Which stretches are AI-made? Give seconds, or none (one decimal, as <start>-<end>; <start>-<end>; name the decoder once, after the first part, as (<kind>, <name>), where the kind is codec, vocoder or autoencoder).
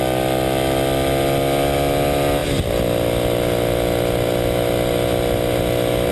none